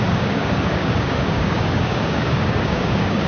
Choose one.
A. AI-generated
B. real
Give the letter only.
A